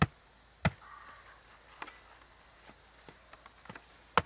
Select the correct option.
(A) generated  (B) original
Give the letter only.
B